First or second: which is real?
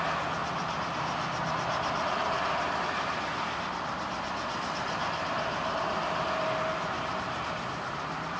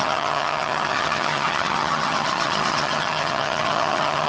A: first